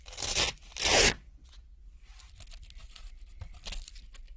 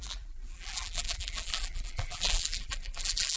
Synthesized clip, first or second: second